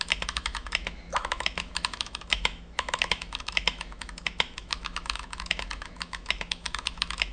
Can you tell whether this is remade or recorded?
remade